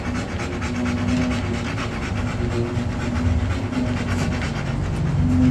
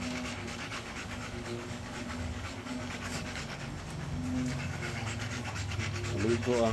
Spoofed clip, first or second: second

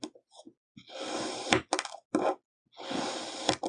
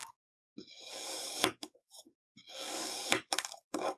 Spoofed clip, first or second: second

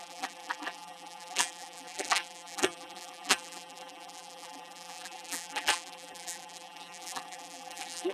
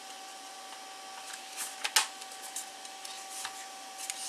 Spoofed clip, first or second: first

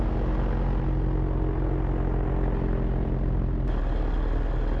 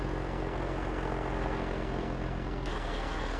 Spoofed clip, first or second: second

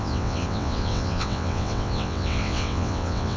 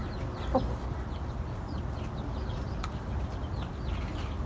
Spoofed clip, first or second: first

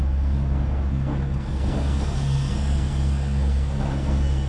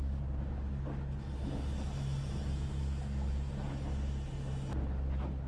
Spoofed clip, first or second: first